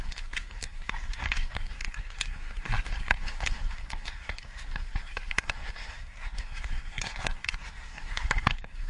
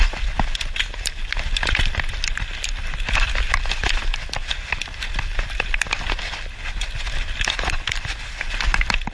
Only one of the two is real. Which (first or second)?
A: second